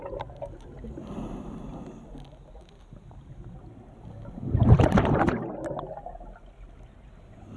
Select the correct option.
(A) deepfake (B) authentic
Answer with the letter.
B